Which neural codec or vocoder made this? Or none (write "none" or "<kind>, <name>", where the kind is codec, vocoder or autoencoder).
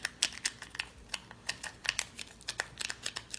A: none